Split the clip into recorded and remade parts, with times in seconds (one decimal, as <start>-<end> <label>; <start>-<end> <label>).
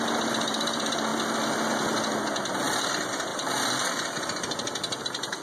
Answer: 0.0-1.1 remade; 1.1-2.9 recorded; 2.9-3.3 remade; 3.3-5.0 recorded; 5.0-5.4 remade